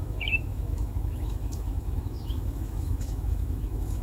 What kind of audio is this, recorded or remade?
remade